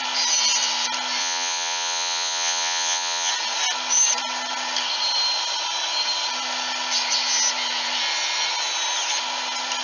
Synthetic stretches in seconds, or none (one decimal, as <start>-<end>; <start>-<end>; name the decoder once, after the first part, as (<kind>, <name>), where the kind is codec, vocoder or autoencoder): 1.2-3.3 (vocoder, Vocos)